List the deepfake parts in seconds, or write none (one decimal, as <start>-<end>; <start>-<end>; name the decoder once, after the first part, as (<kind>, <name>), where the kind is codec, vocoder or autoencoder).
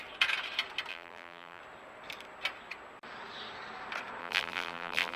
0.9-1.6 (vocoder, BigVGAN v2); 4.2-5.2